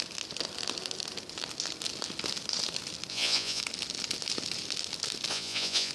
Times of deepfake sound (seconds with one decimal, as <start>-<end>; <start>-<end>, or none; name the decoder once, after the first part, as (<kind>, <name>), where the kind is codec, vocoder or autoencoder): 3.1-3.6 (vocoder, Vocos); 5.3-5.9